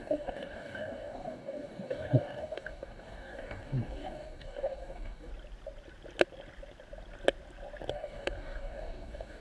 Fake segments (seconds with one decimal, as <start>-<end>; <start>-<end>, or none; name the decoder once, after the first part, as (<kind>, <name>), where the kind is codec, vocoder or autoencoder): 0.0-5.3 (codec, DAC); 7.9-9.4